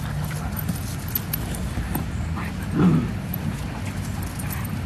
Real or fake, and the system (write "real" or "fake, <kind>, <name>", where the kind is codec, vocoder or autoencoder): real